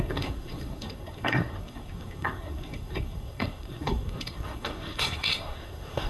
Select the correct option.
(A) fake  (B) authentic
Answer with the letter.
A